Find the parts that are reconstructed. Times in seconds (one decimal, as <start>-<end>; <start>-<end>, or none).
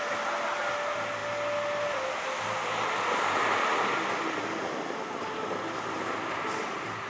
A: none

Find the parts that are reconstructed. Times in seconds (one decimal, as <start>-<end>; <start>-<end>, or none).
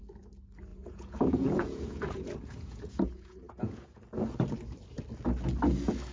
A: 0.7-4.0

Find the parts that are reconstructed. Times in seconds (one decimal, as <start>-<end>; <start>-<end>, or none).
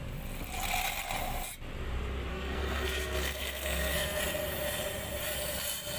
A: 2.3-4.2